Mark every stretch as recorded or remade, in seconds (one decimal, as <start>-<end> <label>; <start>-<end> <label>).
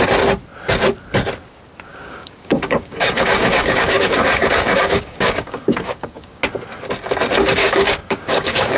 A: 0.0-1.9 recorded; 1.9-6.4 remade; 6.4-7.6 recorded; 7.6-8.8 remade